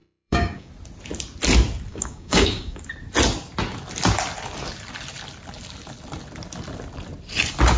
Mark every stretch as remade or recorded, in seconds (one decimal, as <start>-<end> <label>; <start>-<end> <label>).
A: 0.0-0.7 remade; 0.7-1.9 recorded; 1.9-2.8 remade; 2.8-7.8 recorded